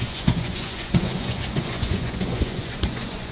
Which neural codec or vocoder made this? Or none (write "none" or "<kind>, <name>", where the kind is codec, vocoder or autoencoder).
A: vocoder, Vocos